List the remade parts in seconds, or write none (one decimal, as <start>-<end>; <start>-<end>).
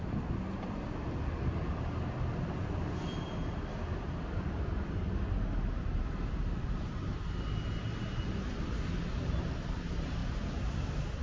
none